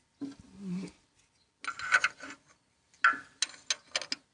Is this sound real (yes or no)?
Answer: yes